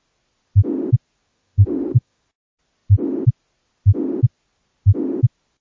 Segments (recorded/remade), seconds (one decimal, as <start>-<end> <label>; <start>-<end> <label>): 0.0-1.3 recorded; 1.3-2.2 remade; 2.2-5.6 recorded